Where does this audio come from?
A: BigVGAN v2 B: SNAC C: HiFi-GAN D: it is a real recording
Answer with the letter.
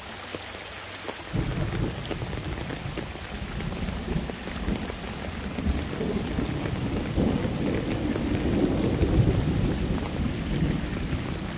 D